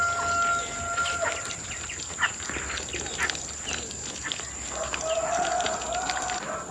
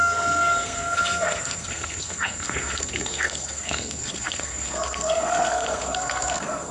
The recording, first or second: first